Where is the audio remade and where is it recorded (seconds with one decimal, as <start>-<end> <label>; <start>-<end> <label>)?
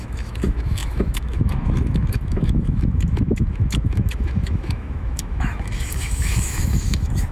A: 0.0-7.3 remade